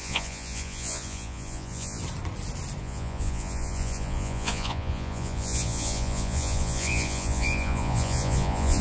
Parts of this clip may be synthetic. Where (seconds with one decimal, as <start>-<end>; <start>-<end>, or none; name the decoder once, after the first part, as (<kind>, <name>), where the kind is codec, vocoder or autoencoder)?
0.0-2.0 (vocoder, Vocos); 2.8-8.8